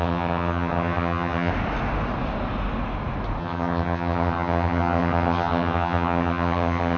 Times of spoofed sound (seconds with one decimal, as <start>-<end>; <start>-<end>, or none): 0.0-1.5; 3.4-7.0